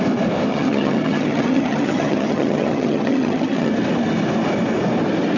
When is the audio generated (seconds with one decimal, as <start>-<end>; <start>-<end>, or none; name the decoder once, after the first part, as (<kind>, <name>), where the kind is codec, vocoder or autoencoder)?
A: 0.5-3.7 (vocoder, HiFi-GAN)